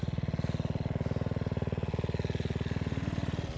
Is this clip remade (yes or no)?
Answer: no